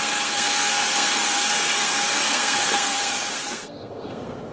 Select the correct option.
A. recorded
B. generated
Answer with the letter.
B